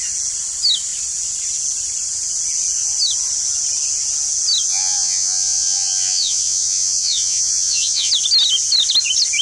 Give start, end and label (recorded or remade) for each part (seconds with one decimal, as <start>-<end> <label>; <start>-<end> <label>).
0.0-4.7 recorded; 4.7-8.1 remade; 8.1-9.4 recorded